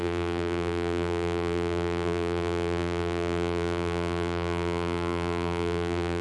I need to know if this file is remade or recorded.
remade